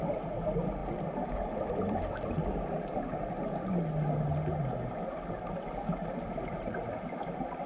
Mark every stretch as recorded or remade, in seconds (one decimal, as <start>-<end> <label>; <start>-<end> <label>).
0.0-7.7 recorded